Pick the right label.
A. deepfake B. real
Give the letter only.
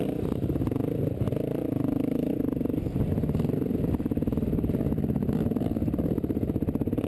A